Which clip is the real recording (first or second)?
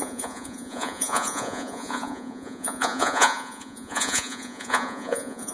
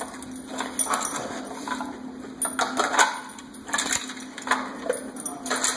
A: second